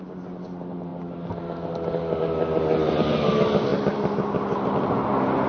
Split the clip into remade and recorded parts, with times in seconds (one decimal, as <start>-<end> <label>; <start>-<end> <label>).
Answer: 0.0-5.5 recorded